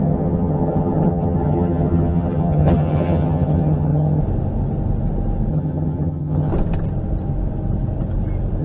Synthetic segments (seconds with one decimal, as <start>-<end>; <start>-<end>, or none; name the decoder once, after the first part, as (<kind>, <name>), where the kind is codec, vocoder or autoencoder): 0.0-4.2 (vocoder, HiFi-GAN); 5.5-6.5